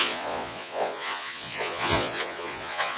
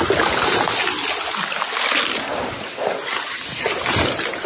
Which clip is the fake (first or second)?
first